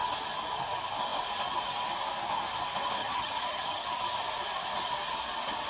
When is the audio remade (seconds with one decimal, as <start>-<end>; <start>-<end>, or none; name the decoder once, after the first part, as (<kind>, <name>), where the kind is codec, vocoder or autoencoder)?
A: 3.0-4.0 (vocoder, HiFi-GAN)